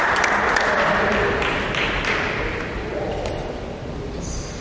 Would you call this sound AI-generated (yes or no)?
no